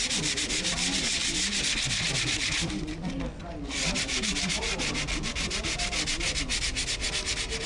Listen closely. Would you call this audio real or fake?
real